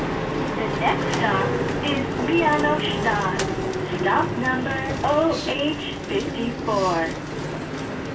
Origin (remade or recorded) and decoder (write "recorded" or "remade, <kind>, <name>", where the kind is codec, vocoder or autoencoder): recorded